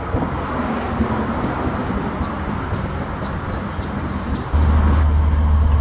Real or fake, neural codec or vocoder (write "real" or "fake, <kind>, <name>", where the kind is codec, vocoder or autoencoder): real